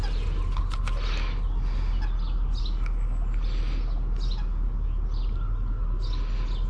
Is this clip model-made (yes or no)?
no